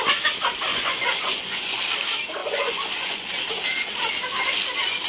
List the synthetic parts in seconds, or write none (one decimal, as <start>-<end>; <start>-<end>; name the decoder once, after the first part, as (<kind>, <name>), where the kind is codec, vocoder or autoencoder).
0.7-1.8 (vocoder, Vocos); 2.4-3.3